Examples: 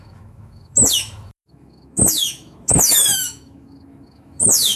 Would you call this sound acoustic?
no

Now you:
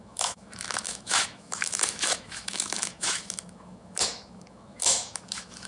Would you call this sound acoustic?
no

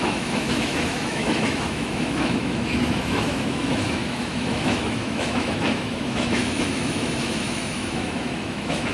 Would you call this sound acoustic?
no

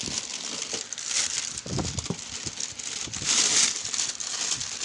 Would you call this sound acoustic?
no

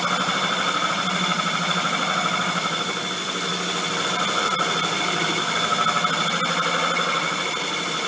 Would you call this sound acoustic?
yes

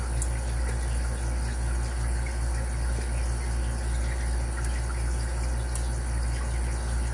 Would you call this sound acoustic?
yes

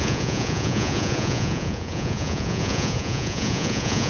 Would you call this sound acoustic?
no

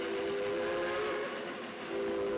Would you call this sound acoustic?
yes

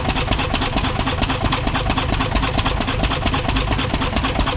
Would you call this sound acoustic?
yes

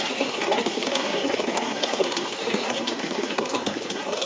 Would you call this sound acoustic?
no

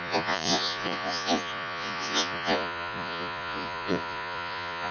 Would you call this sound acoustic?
no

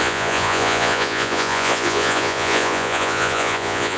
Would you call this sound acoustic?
no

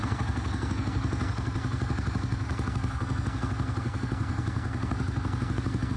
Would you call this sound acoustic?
no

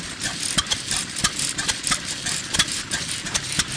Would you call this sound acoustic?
no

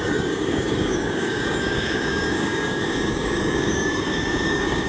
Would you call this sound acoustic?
no